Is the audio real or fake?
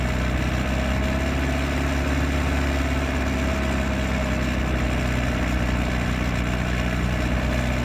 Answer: real